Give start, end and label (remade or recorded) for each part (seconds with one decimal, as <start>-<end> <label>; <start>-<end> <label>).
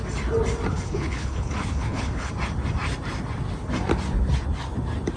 0.0-0.7 recorded; 0.7-2.3 remade; 2.3-5.2 recorded